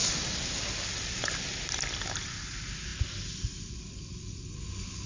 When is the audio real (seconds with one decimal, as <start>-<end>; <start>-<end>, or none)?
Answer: 0.0-5.1